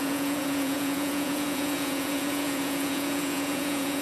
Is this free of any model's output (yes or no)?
no